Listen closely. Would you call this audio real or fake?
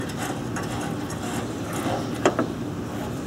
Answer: real